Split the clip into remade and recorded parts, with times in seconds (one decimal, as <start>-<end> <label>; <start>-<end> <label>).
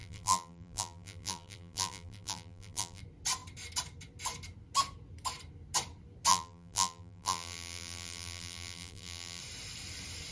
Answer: 0.0-3.0 remade; 3.0-6.3 recorded; 6.3-9.4 remade; 9.4-10.3 recorded